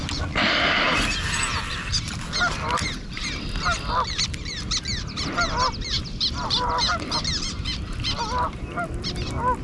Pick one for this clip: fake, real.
real